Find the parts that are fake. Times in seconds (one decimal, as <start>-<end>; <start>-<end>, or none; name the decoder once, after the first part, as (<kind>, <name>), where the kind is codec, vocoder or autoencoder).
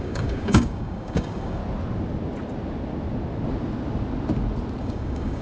0.0-1.6 (codec, DAC); 4.8-5.4